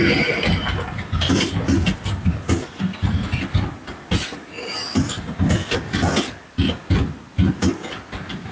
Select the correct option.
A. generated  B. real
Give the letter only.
B